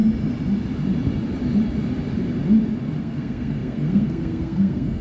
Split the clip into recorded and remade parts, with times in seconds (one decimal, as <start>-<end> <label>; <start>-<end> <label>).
0.0-3.0 recorded; 3.0-5.0 remade